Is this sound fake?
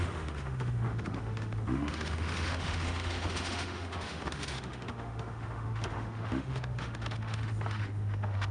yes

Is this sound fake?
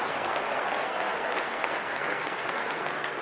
yes